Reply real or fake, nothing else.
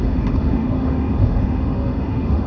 fake